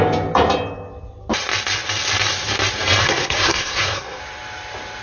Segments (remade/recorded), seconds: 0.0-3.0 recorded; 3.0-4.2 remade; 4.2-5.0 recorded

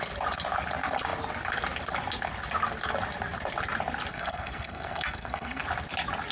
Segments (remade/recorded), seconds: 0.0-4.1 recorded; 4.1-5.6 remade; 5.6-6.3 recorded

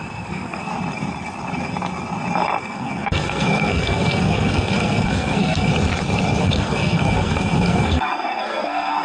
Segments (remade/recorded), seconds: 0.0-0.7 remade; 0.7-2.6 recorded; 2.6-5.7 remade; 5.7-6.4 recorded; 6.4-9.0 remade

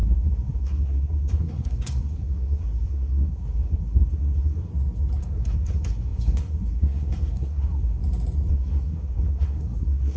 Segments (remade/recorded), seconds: 0.0-4.7 remade; 4.7-5.2 recorded; 5.2-8.0 remade; 8.0-8.5 recorded; 8.5-10.2 remade